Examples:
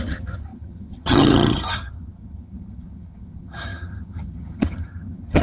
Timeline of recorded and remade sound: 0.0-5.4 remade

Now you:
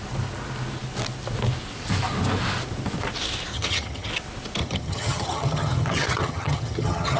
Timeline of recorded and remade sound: 0.0-3.5 recorded; 3.5-4.1 remade; 4.1-4.6 recorded; 4.6-7.2 remade

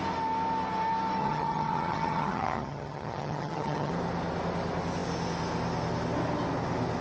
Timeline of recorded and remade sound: 0.0-1.2 recorded; 1.2-3.9 remade; 3.9-7.0 recorded

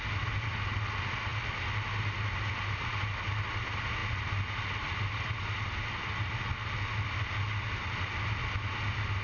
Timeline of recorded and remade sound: 0.0-9.2 recorded